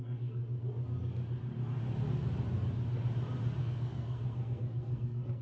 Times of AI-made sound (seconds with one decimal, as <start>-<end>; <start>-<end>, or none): 0.0-0.4; 3.6-5.4